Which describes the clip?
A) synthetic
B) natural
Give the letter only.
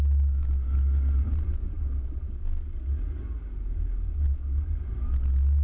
B